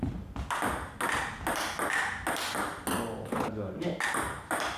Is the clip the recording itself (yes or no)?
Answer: yes